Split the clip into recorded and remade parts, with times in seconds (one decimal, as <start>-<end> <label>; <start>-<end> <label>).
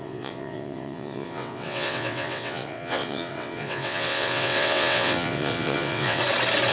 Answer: 0.0-6.2 remade; 6.2-6.7 recorded